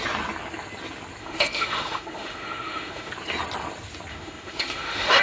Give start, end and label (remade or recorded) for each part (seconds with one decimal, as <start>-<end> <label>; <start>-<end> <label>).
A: 0.0-1.2 recorded; 1.2-3.1 remade; 3.1-4.1 recorded; 4.1-5.2 remade